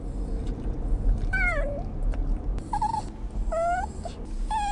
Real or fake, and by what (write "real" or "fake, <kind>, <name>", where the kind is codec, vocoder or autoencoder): real